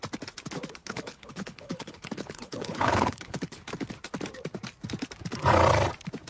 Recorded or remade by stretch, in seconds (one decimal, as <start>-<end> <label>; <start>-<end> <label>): 0.0-0.8 recorded; 0.8-3.6 remade; 3.6-6.3 recorded